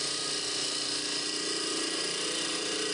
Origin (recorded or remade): remade